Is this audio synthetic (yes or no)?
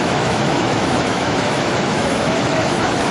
yes